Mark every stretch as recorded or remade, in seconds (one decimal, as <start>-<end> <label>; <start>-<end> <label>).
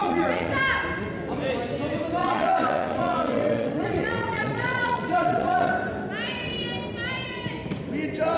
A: 0.0-0.5 remade; 0.5-2.2 recorded; 2.2-5.7 remade; 5.7-8.4 recorded